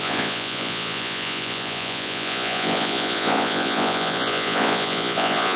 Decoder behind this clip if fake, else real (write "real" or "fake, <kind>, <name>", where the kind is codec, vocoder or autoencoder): fake, vocoder, Vocos